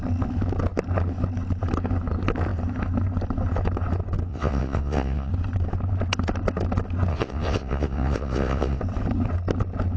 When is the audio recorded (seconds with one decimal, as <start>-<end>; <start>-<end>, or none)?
0.0-4.3; 5.3-7.1; 8.8-10.0